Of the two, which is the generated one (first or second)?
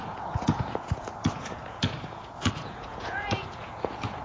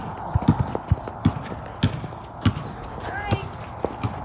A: first